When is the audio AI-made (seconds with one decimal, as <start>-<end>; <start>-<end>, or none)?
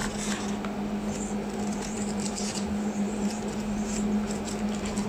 1.7-4.5